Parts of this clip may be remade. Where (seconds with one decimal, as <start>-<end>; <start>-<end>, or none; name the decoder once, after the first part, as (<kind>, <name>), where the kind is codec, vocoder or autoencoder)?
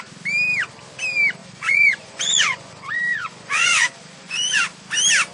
1.4-4.6 (vocoder, Vocos)